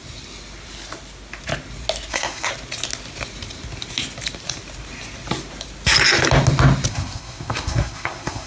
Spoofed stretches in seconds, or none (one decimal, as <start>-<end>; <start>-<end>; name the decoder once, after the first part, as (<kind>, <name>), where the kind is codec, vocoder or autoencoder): 2.1-2.5 (codec, SNAC); 6.9-8.5